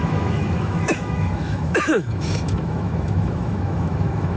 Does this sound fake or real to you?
fake